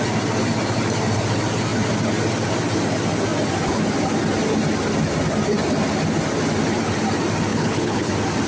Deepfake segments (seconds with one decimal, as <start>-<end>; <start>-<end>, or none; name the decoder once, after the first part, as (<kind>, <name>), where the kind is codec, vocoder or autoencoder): 7.5-8.1 (codec, HILCodec)